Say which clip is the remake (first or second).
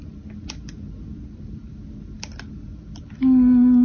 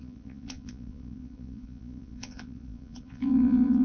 second